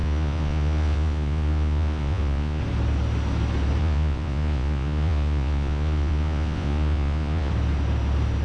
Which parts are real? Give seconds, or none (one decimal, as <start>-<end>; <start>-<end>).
2.6-3.8; 7.5-8.4